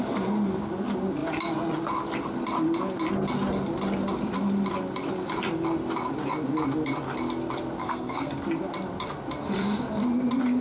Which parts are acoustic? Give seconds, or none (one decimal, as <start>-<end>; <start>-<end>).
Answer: 0.0-7.8; 8.3-10.6